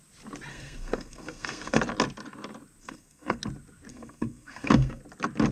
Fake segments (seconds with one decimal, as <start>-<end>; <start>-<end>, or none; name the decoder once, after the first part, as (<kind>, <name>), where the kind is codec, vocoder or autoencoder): 0.5-1.8 (codec, SNAC); 2.8-3.4; 3.9-5.0